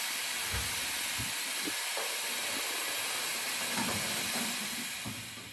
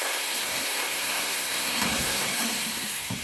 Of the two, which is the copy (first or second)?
second